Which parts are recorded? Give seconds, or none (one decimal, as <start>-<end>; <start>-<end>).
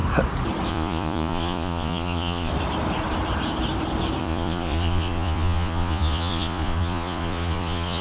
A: 0.0-0.7; 2.5-4.2